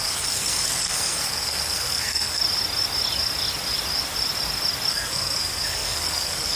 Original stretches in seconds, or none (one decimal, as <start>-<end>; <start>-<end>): 2.4-4.9